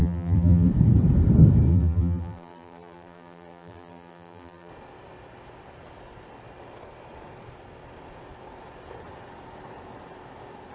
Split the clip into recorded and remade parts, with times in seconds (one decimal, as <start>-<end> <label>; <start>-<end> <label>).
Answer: 0.0-0.7 remade; 0.7-1.7 recorded; 1.7-4.7 remade; 4.7-10.7 recorded